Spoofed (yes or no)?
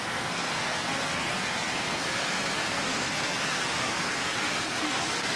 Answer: yes